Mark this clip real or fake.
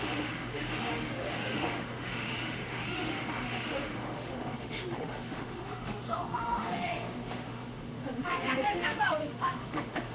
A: fake